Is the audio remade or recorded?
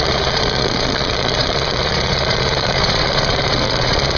remade